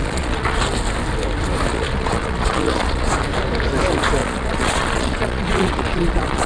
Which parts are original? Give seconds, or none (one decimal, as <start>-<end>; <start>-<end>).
0.6-1.7; 3.1-4.2